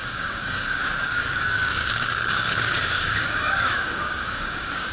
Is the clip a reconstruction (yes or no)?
yes